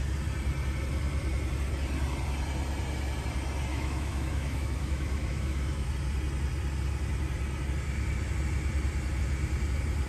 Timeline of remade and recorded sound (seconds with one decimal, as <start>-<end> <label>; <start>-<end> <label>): 0.0-3.7 recorded; 3.7-5.9 remade; 5.9-10.1 recorded